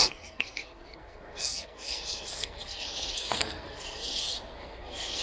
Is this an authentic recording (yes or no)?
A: no